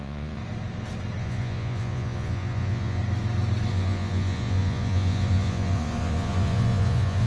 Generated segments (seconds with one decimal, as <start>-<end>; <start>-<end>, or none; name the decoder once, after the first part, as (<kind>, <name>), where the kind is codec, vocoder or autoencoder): 0.0-0.4 (vocoder, Vocos); 1.2-3.0; 3.7-7.3